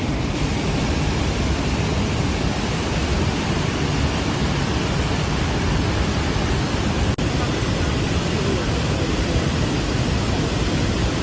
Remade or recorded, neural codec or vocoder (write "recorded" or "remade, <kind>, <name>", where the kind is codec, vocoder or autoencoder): recorded